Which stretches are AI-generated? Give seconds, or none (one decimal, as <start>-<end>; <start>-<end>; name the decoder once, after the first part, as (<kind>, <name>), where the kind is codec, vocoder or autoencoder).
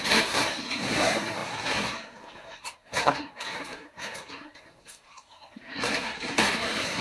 0.0-7.0 (codec, SNAC)